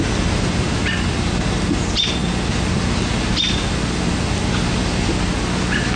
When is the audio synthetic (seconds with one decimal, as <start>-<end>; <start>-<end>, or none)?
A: none